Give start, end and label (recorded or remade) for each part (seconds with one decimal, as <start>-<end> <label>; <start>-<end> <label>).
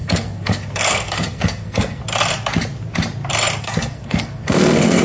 0.0-2.0 remade; 2.0-3.6 recorded; 3.6-5.0 remade